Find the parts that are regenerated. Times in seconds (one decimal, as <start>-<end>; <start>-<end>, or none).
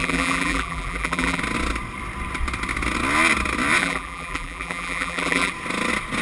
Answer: 0.0-1.4; 3.8-5.5